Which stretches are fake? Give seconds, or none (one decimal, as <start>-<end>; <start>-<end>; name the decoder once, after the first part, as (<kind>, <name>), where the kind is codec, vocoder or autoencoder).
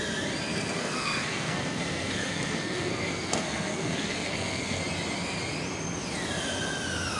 0.5-4.8 (codec, SNAC)